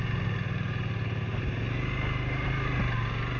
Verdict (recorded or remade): recorded